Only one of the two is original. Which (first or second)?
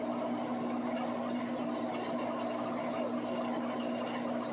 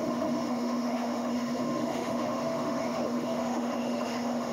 first